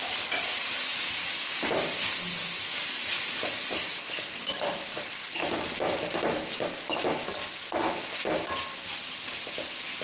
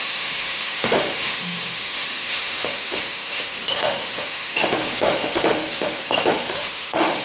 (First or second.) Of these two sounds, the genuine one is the first